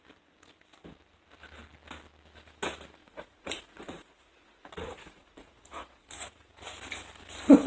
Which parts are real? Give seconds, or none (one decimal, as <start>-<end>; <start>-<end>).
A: 0.0-3.0; 6.5-7.7